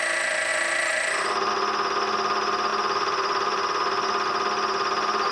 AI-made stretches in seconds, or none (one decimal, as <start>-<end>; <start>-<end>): none

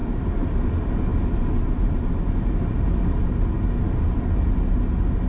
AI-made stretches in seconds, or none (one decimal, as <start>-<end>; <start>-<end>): none

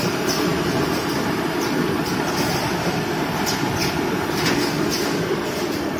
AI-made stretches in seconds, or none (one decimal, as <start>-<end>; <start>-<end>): 0.0-6.0

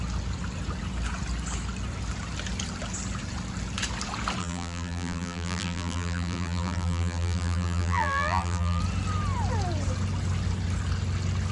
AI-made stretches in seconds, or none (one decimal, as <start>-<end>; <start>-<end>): 4.4-8.8